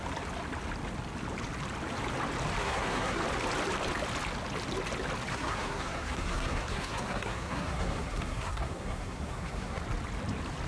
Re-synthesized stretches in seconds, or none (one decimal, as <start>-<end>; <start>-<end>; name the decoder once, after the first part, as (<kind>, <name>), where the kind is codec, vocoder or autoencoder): 2.6-3.2 (codec, SNAC); 5.3-9.8